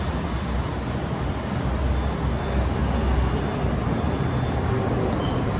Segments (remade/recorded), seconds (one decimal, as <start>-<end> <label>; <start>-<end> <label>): 0.0-5.6 recorded